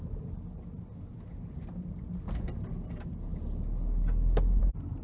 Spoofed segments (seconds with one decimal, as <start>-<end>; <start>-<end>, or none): none